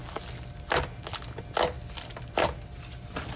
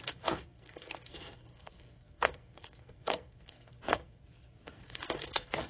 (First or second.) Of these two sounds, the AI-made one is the second